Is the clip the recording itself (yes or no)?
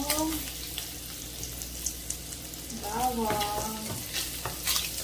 yes